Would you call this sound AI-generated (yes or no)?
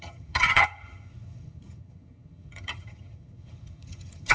yes